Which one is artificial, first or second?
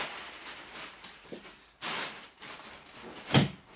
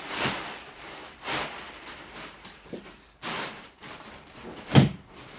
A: second